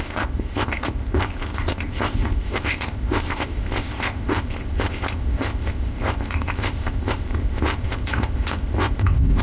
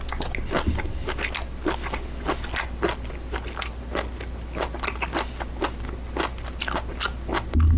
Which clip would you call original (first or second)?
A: second